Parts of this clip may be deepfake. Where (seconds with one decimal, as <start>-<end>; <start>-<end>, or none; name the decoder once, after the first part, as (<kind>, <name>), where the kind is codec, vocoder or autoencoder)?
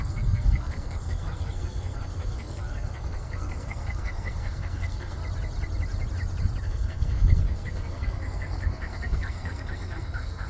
0.0-5.2 (codec, SNAC); 6.6-10.5